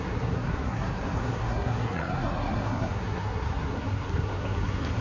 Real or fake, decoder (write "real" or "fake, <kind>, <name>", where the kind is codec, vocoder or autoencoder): fake, codec, SNAC